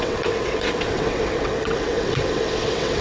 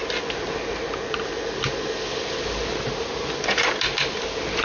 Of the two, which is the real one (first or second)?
second